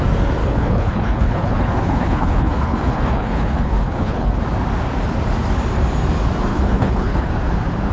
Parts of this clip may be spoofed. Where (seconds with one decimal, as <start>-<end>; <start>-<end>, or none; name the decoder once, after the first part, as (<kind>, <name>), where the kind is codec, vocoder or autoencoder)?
0.4-4.4 (codec, HILCodec); 6.5-7.3